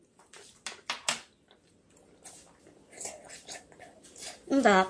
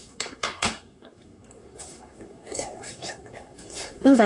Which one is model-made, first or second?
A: second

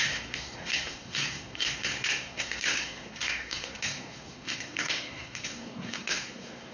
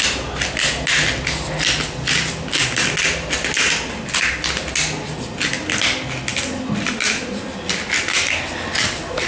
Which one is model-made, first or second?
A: first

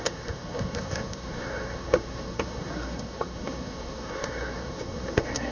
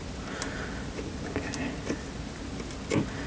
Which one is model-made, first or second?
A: first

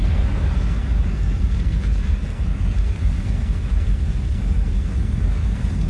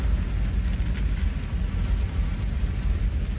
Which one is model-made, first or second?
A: first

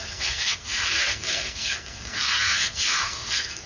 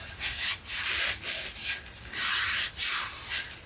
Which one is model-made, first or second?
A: first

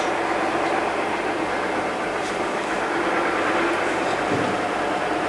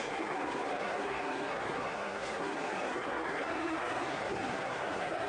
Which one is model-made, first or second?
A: second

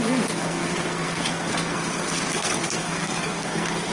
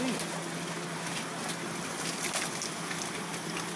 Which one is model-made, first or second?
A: first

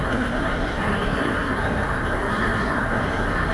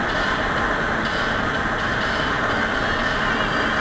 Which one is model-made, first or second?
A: first